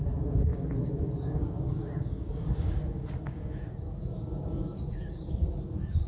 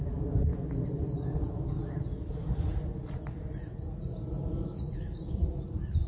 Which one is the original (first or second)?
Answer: second